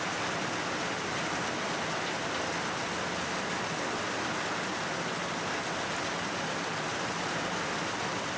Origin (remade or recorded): recorded